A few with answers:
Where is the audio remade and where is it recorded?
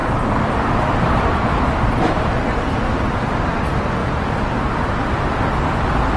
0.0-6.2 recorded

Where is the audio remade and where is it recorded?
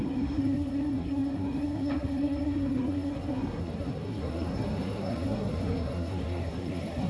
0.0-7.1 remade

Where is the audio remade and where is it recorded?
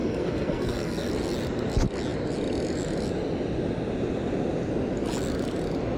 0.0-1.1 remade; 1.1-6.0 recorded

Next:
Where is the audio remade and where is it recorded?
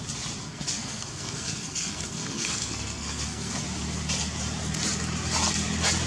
0.0-0.4 recorded; 0.4-3.6 remade; 3.6-6.1 recorded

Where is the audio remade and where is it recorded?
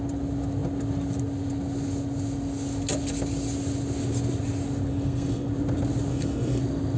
0.0-4.9 recorded; 4.9-5.5 remade; 5.5-6.1 recorded; 6.1-6.6 remade; 6.6-7.0 recorded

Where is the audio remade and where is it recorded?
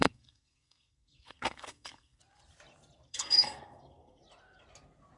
0.0-2.2 remade; 2.2-3.1 recorded; 3.1-4.2 remade; 4.2-5.2 recorded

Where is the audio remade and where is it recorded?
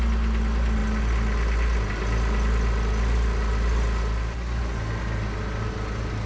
0.0-6.3 recorded